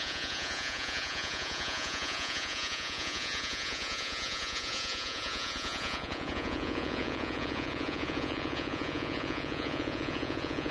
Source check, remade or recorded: remade